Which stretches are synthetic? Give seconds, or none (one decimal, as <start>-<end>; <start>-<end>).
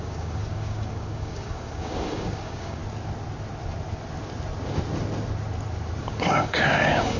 0.0-2.8; 6.0-7.2